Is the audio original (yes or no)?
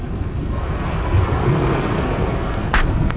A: no